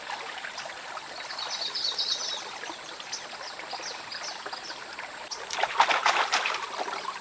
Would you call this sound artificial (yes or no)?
no